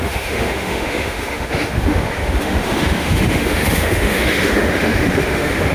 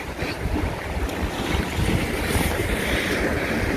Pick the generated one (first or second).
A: first